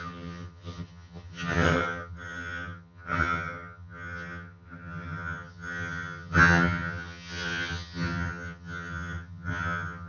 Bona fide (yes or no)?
no